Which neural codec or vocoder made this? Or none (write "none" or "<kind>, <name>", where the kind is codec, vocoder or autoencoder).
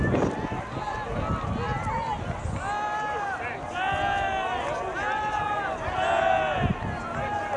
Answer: none